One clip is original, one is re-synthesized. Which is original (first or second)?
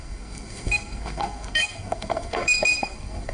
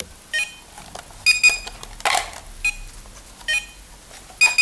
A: second